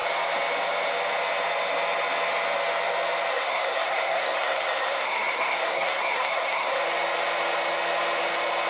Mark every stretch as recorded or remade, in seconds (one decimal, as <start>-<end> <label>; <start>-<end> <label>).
0.0-3.3 recorded; 3.3-6.8 remade; 6.8-8.7 recorded